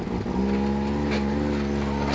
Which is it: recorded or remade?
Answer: recorded